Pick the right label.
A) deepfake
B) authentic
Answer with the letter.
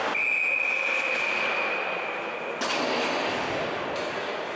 B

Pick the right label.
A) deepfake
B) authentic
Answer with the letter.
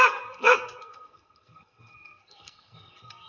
A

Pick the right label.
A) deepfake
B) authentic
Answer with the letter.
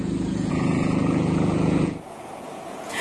A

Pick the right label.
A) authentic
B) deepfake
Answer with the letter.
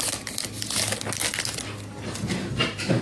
A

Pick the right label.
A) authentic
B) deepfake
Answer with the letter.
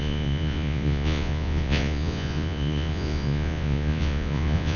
B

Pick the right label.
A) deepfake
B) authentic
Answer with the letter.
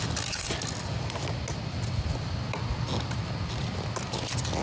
B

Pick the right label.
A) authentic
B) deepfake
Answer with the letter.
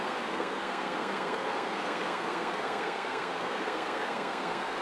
B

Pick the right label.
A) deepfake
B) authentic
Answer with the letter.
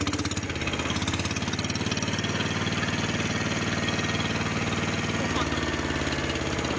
B